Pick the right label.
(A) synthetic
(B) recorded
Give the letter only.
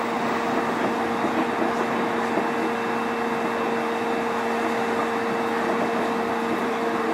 B